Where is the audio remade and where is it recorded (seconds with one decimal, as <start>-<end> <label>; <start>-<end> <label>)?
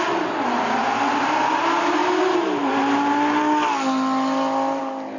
0.0-5.2 recorded